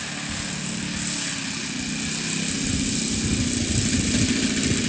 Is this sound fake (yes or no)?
no